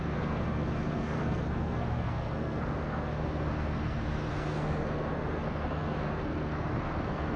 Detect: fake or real fake